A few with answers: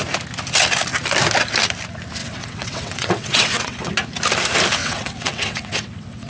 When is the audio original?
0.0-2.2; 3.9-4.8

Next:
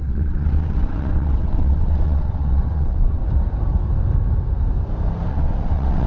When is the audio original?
3.2-5.3

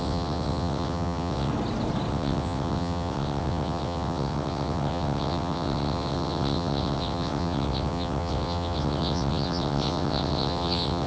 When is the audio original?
1.5-2.1

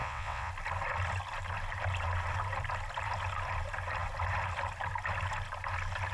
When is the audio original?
0.5-6.1

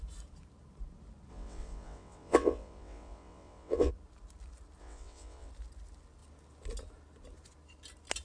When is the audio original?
0.0-1.3; 3.9-4.8; 5.5-8.2

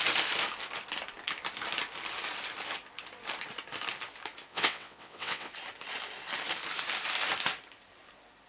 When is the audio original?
0.0-4.5; 5.5-8.5

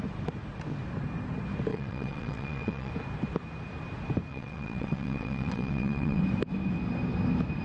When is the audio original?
0.0-1.7; 2.9-4.3; 6.2-7.6

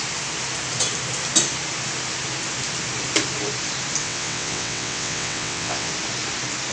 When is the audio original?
0.0-4.0; 5.9-6.7